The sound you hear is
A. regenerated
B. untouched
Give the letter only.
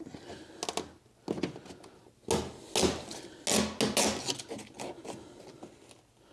B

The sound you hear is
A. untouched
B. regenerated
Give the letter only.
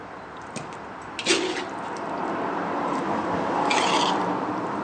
A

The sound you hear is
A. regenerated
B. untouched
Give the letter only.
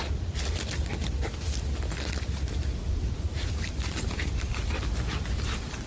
B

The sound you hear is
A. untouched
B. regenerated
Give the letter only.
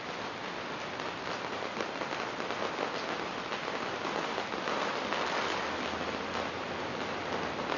A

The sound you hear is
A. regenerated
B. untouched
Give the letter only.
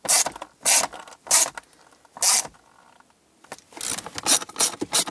B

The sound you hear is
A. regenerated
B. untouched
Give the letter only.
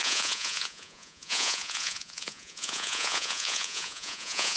A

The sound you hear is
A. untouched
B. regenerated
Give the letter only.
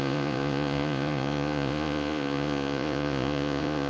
B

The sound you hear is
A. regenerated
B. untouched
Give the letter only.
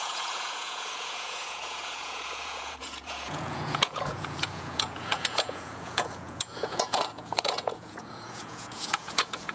A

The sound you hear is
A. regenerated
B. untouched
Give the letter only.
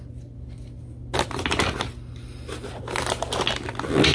B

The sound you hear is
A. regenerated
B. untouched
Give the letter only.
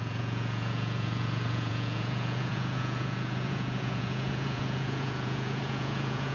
A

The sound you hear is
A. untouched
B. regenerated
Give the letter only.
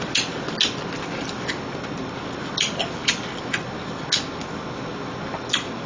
A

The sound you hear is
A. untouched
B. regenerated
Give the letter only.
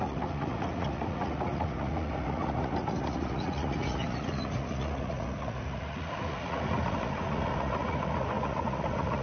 B